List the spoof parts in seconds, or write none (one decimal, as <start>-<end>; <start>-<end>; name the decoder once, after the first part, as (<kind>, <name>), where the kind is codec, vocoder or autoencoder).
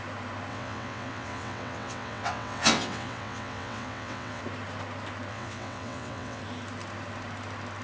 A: 0.5-4.4 (vocoder, WaveNeXt); 5.3-6.4